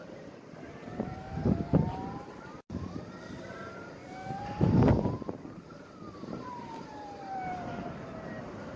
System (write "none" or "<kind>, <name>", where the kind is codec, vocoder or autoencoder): vocoder, BigVGAN v2